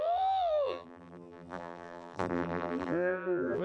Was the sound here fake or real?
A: fake